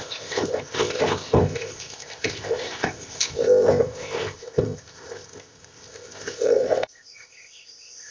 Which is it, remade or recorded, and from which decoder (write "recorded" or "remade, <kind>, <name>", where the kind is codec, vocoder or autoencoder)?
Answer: remade, codec, ZipCodec